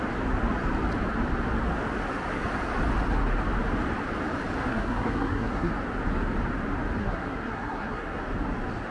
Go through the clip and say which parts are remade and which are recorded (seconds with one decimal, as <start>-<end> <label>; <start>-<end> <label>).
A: 0.0-4.6 recorded; 4.6-5.7 remade; 5.7-7.0 recorded; 7.0-8.2 remade; 8.2-8.9 recorded